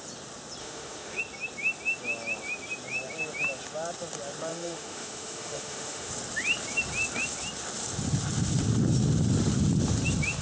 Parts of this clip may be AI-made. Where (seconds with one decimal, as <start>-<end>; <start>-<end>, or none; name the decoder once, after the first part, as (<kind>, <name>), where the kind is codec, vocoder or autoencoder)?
0.6-1.2 (autoencoder, DAC-VAE); 4.5-6.1